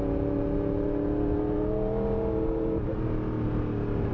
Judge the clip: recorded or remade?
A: recorded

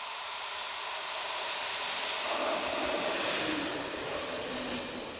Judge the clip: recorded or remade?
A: recorded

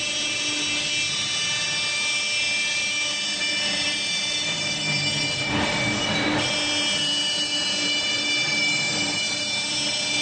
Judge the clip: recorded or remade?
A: remade